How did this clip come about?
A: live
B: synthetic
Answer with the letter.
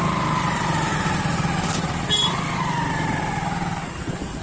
A